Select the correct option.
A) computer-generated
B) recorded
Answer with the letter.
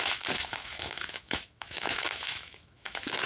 A